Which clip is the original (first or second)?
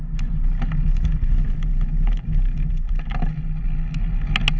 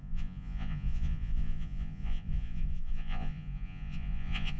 first